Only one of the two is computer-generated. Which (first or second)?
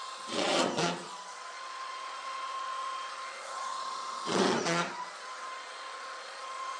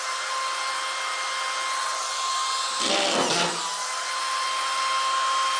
first